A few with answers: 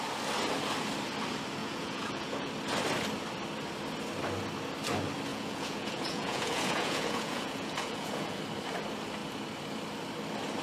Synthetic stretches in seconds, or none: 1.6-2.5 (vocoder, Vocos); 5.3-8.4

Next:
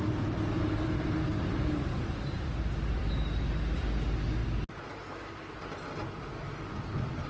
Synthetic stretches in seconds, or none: none